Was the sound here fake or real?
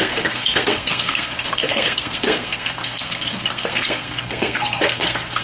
fake